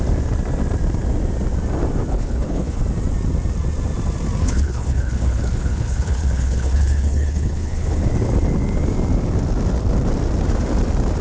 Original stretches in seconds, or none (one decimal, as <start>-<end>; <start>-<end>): 0.0-2.1; 2.8-4.4; 8.1-11.2